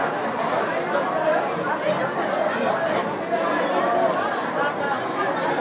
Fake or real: real